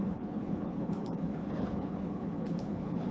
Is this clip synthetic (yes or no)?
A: yes